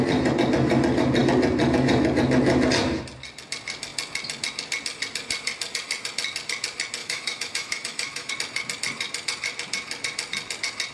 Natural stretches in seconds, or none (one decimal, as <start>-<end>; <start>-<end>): 0.0-7.0; 8.3-10.9